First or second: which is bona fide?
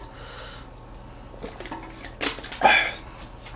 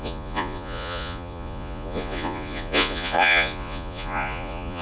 first